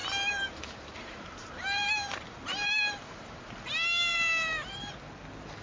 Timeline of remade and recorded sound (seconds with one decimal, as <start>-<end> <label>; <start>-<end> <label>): 0.0-3.4 remade; 3.4-4.1 recorded; 4.1-4.9 remade; 4.9-5.6 recorded